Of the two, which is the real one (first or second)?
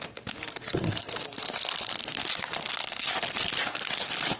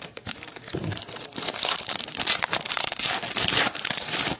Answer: first